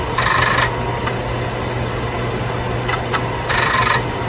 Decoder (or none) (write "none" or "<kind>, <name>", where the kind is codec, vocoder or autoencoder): none